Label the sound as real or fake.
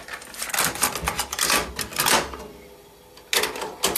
real